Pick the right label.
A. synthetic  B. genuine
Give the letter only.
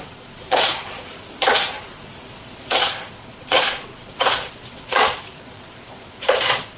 A